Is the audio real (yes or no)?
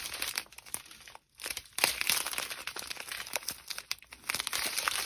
yes